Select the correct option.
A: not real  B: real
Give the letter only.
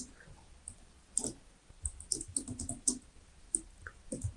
B